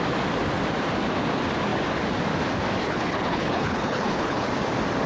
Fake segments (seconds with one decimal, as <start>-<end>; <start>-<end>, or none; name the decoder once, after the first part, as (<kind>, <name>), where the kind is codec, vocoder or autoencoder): 2.8-4.5 (codec, HILCodec)